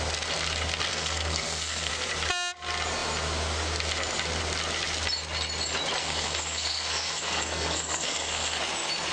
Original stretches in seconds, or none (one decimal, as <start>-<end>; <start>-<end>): 0.0-0.9; 1.9-6.0; 8.6-9.1